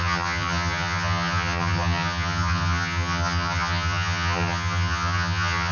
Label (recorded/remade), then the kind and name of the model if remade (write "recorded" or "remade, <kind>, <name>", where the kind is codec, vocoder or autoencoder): remade, vocoder, HiFi-GAN